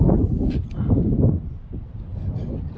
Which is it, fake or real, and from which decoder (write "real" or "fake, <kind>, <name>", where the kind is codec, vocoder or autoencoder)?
real